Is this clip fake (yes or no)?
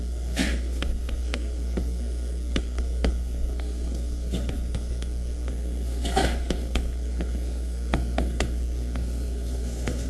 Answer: yes